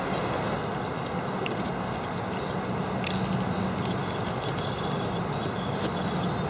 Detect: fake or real real